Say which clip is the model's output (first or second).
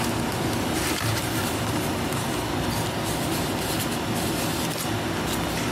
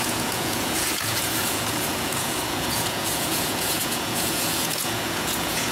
second